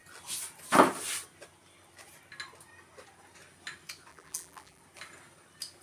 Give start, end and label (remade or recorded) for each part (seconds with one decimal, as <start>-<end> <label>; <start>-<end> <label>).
0.0-4.1 recorded; 4.1-4.8 remade; 4.8-5.8 recorded